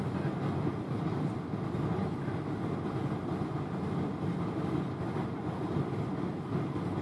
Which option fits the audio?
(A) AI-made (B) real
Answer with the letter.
B